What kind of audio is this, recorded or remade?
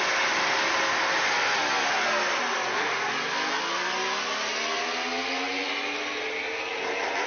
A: recorded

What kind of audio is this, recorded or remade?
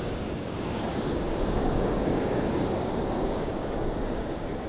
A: remade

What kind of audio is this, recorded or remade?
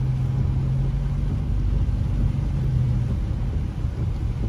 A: recorded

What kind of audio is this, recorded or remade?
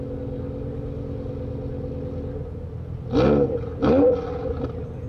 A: recorded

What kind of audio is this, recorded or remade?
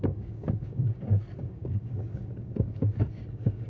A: remade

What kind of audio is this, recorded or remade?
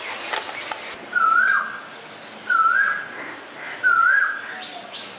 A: recorded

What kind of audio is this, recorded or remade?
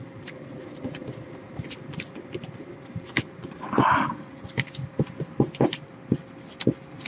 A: recorded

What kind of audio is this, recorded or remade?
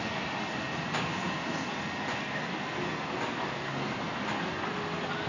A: recorded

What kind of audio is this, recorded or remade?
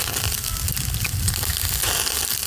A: recorded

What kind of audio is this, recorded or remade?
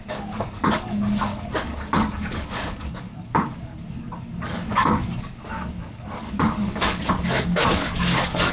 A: remade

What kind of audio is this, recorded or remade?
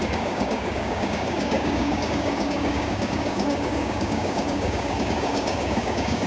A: remade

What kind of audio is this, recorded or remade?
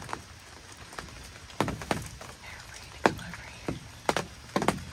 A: recorded